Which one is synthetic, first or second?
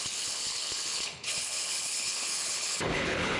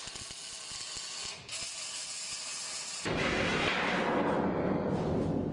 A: first